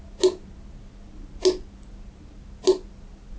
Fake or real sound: real